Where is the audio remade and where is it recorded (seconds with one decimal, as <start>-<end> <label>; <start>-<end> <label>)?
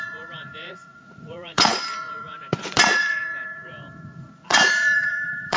0.0-5.6 remade